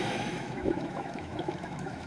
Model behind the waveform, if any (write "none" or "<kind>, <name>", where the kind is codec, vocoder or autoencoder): autoencoder, DAC-VAE